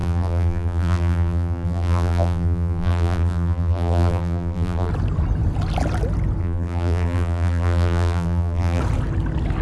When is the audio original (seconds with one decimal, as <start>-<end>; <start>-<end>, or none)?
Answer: 4.9-6.4; 8.8-9.6